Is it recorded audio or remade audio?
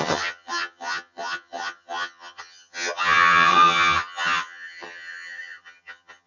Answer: remade